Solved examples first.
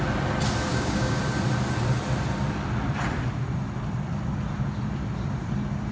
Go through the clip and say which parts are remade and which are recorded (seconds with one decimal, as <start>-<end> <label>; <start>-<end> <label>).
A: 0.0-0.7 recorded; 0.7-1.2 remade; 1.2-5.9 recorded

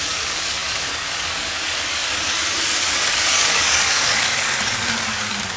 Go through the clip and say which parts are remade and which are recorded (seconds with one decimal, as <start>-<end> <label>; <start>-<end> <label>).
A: 0.0-5.6 remade

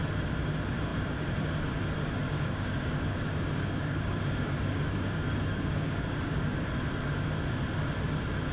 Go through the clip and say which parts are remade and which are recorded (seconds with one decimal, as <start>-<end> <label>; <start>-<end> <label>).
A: 0.0-2.2 recorded; 2.2-6.6 remade; 6.6-8.5 recorded

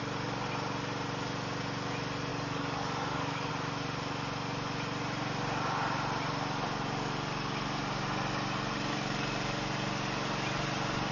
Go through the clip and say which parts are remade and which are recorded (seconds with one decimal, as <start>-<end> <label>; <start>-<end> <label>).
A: 0.0-2.3 recorded; 2.3-3.5 remade; 3.5-11.1 recorded

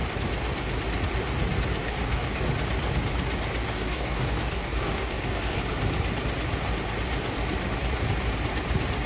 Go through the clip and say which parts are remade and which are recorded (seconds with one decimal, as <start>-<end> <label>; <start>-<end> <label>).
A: 0.0-1.8 recorded; 1.8-2.5 remade; 2.5-3.6 recorded; 3.6-5.6 remade; 5.6-9.1 recorded